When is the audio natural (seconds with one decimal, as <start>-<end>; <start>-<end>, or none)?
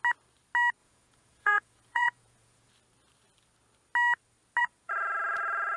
0.0-0.8; 2.7-4.6